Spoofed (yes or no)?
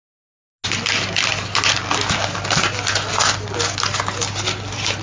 no